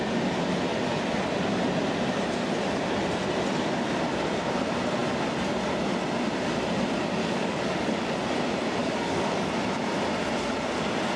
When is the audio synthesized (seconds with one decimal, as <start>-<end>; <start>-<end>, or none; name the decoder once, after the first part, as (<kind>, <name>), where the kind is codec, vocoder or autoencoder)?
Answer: 7.2-8.1 (codec, DAC); 8.8-9.5